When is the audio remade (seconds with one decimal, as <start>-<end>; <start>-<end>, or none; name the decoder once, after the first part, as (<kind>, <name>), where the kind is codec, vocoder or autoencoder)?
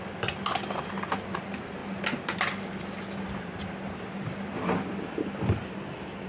none